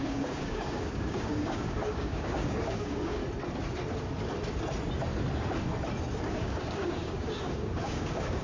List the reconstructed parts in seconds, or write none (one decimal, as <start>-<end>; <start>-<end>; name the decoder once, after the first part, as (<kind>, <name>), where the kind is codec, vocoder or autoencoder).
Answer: 0.0-3.2 (codec, DAC); 6.3-8.4